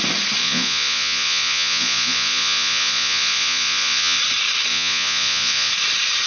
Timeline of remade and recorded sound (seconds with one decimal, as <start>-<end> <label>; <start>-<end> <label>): 0.0-0.4 recorded; 0.4-4.2 remade; 4.2-4.7 recorded; 4.7-5.7 remade; 5.7-6.3 recorded